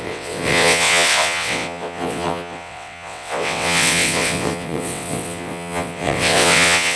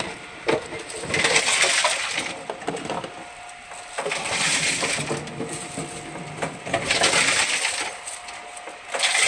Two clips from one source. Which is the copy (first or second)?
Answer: first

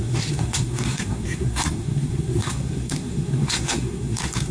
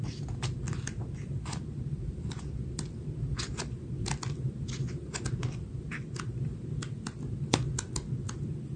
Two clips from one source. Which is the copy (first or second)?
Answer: first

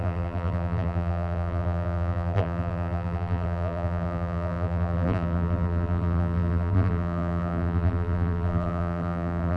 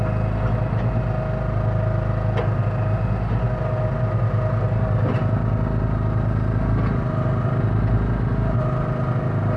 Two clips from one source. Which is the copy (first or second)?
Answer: first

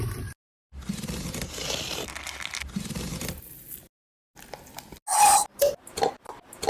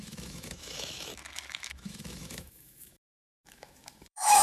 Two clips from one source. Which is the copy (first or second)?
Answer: second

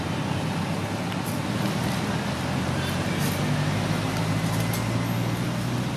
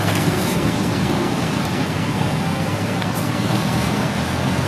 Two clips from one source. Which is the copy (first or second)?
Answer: second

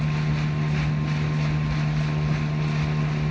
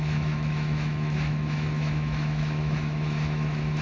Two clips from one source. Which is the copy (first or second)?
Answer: second